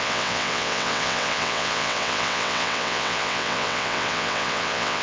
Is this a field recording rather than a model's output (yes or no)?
no